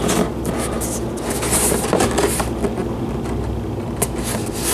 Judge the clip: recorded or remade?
recorded